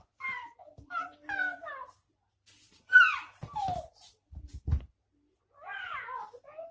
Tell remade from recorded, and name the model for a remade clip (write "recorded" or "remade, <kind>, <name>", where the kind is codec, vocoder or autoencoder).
remade, vocoder, BigVGAN v2